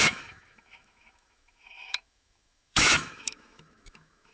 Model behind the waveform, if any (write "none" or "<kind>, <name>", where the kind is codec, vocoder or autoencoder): autoencoder, DAC-VAE